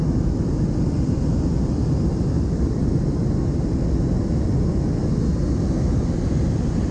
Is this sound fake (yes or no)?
no